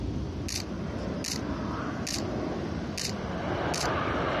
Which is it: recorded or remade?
recorded